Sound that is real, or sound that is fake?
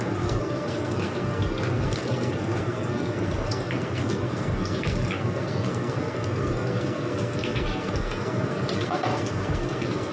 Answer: fake